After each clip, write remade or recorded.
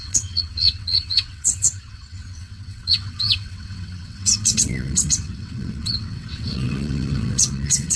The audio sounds remade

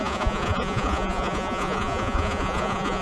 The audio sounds remade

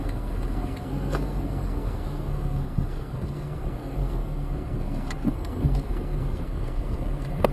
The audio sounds remade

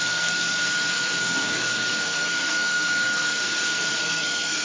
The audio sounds remade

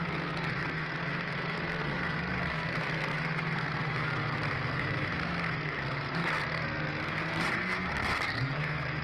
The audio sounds remade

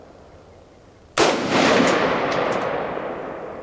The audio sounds recorded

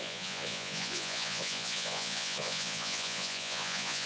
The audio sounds remade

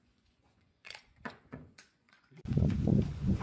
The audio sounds remade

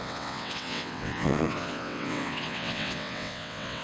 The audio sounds remade